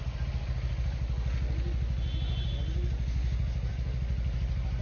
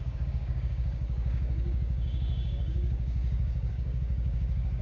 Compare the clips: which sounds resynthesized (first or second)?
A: second